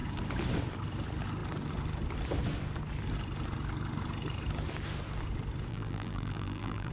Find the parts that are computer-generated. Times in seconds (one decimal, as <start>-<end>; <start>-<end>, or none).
5.7-6.9